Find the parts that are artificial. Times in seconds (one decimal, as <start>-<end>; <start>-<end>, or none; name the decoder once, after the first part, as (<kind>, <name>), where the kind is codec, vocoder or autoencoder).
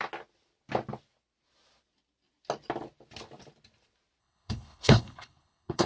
4.2-5.9 (codec, HILCodec)